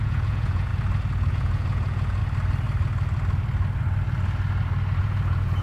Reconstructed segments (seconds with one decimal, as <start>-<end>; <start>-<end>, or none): 0.0-0.7; 1.3-2.2; 5.0-5.6